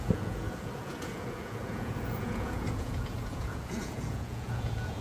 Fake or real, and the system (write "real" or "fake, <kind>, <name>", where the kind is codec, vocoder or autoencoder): fake, vocoder, Vocos